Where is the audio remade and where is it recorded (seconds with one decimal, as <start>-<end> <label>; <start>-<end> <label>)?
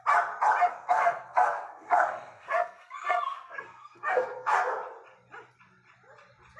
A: 0.0-0.7 recorded; 0.7-4.7 remade; 4.7-6.6 recorded